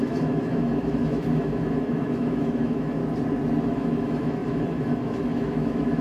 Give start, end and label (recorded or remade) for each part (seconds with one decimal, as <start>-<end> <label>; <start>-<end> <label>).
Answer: 0.0-3.0 remade; 3.0-3.6 recorded; 3.6-6.0 remade